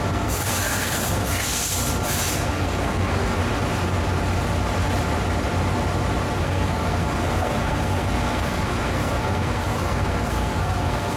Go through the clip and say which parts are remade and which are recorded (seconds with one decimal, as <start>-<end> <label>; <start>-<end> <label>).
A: 0.0-1.8 remade; 1.8-2.3 recorded; 2.3-3.4 remade; 3.4-6.4 recorded; 6.4-11.2 remade